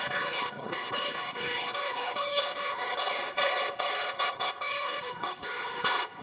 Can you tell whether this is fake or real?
fake